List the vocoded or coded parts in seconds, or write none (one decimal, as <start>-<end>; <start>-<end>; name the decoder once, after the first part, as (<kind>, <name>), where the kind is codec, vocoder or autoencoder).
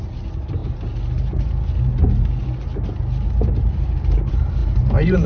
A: 0.0-0.6 (vocoder, BigVGAN v2); 3.7-5.3